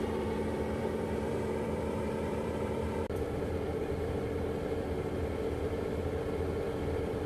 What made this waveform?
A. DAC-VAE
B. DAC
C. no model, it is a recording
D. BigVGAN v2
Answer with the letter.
D